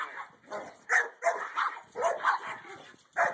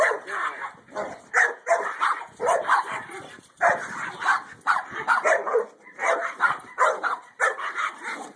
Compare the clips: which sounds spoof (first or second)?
second